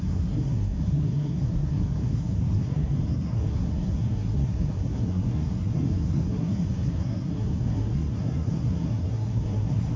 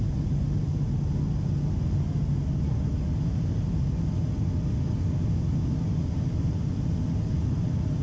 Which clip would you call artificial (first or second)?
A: first